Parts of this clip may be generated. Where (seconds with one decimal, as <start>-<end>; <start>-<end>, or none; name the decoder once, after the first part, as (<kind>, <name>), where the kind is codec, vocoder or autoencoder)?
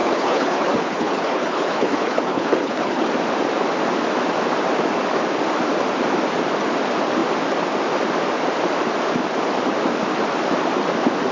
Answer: 0.0-3.1 (codec, HILCodec)